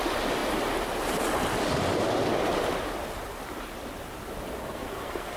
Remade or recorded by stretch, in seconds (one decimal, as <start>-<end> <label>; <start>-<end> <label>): 0.0-4.6 recorded; 4.6-5.4 remade